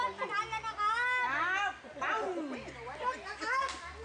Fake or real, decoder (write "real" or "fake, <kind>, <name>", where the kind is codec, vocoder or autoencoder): real